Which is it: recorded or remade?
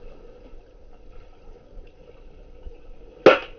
recorded